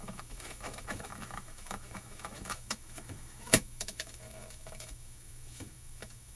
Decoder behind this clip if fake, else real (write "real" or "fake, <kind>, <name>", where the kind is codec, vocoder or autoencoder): fake, autoencoder, DAC-VAE